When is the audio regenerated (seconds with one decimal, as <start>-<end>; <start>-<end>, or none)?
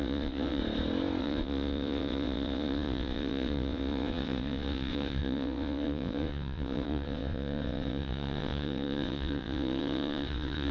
0.0-0.6; 1.2-10.7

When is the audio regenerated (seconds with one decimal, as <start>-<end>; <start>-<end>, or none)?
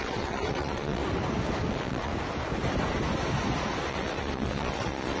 0.0-1.0; 1.7-2.1; 3.9-5.2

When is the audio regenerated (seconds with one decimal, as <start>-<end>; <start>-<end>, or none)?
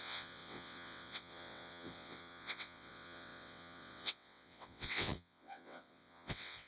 0.0-6.7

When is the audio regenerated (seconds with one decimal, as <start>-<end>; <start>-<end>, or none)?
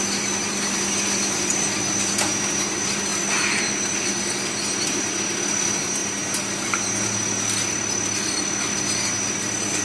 none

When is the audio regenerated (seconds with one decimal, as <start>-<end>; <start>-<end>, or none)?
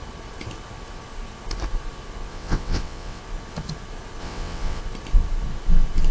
2.3-3.2; 4.2-4.8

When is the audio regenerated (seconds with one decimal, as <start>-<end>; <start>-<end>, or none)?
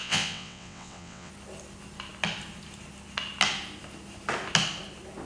0.0-1.3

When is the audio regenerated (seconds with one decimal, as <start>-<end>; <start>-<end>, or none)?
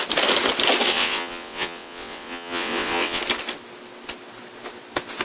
0.9-3.2